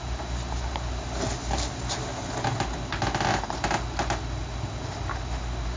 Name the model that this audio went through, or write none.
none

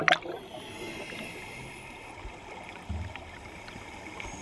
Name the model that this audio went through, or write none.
none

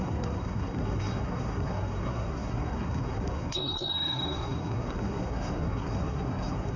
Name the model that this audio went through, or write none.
codec, SNAC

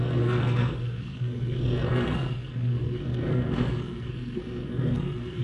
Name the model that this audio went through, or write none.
codec, SNAC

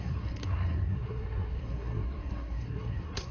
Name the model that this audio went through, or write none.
codec, SNAC